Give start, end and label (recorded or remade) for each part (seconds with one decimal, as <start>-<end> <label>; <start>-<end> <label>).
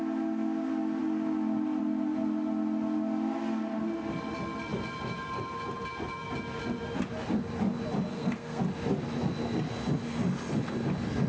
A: 0.0-8.1 recorded; 8.1-8.6 remade; 8.6-11.3 recorded